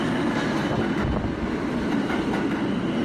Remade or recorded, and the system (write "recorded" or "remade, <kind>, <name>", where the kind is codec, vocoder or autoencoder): remade, vocoder, BigVGAN v2